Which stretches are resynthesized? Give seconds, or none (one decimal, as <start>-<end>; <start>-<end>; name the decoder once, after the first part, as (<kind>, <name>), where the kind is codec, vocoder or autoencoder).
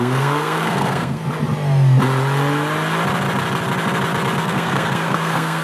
0.0-1.2 (codec, SNAC); 4.4-5.6